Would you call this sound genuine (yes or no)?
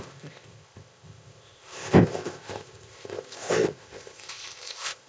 no